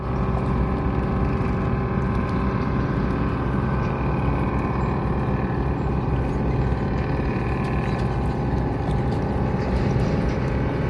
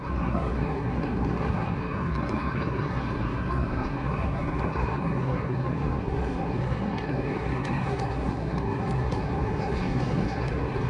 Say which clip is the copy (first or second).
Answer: second